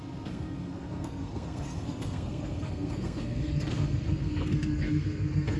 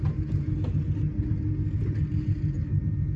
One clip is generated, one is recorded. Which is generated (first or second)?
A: first